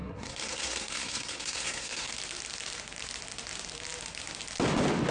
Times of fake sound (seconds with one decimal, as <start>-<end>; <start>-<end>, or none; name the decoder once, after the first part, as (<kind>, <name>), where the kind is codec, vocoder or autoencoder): 0.0-2.1 (codec, SNAC)